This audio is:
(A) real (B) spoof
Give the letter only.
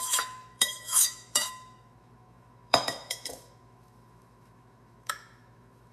B